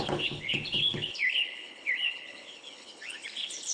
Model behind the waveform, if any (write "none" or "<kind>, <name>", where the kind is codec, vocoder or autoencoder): codec, HILCodec